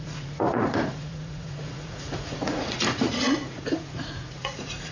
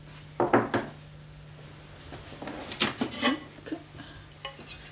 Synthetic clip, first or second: first